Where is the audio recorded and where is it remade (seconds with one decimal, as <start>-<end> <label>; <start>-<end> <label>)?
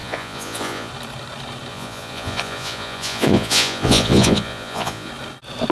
0.0-0.9 remade; 0.9-1.7 recorded; 1.7-5.1 remade; 5.1-5.7 recorded